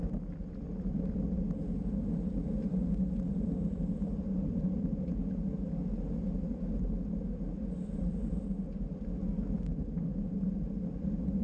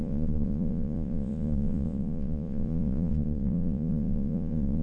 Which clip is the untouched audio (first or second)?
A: first